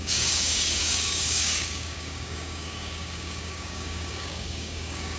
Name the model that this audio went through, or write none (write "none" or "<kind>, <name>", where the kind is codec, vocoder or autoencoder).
codec, DAC